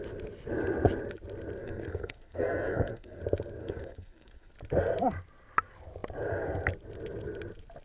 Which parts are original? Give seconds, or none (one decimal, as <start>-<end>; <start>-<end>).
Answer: 0.0-1.6; 3.2-3.6; 4.5-7.8